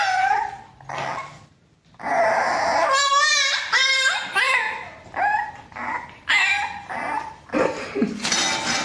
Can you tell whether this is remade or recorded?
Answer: recorded